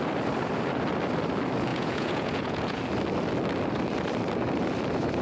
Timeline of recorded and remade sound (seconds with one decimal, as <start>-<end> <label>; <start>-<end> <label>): 0.0-1.7 recorded; 1.7-2.8 remade; 2.8-5.2 recorded